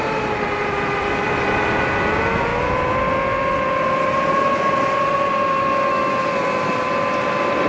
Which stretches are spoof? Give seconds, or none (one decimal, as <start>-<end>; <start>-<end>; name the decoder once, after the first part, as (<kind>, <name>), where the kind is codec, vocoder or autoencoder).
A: none